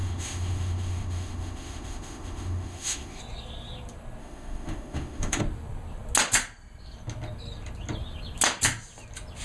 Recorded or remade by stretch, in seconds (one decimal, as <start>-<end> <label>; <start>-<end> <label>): 0.0-3.2 remade; 3.2-4.2 recorded; 4.2-5.4 remade; 5.4-9.4 recorded

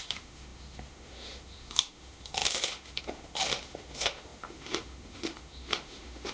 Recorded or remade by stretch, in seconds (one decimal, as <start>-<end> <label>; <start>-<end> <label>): 0.0-6.3 remade

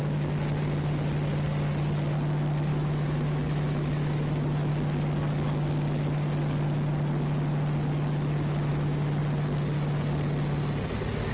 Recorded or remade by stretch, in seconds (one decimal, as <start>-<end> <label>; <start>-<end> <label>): 0.0-2.7 recorded; 2.7-4.7 remade; 4.7-8.7 recorded; 8.7-9.2 remade; 9.2-11.3 recorded

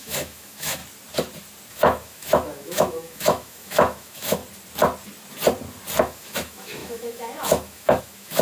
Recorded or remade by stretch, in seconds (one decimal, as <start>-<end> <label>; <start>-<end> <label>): 0.0-0.8 remade; 0.8-1.7 recorded; 1.7-4.4 remade; 4.4-6.0 recorded; 6.0-8.4 remade